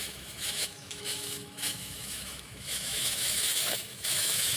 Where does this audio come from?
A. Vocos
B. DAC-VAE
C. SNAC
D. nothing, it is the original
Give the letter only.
B